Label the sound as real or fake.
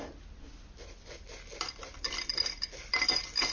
real